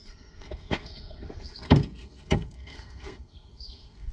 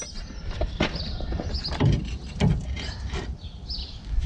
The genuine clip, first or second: second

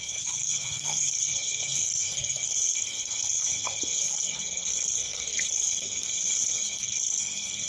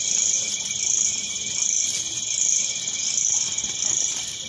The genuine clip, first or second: second